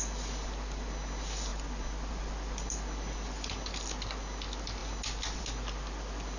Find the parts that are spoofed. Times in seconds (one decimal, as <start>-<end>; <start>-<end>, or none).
none